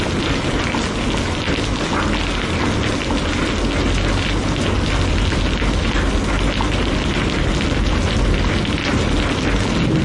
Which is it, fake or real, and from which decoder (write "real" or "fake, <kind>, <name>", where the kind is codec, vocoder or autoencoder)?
real